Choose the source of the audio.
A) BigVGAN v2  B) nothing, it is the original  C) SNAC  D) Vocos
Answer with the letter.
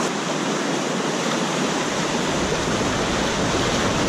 B